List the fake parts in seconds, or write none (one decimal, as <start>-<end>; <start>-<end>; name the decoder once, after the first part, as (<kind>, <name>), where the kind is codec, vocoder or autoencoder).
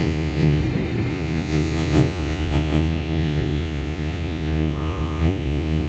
0.0-0.6 (vocoder, Vocos); 1.1-5.9